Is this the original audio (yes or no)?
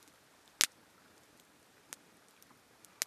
yes